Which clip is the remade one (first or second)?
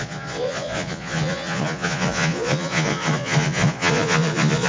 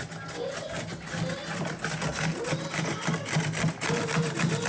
first